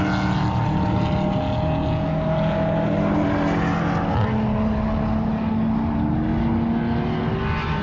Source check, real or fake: real